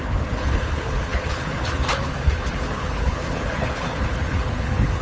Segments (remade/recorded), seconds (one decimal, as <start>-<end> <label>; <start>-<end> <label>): 0.0-5.0 remade